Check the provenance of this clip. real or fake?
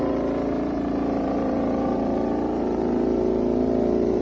fake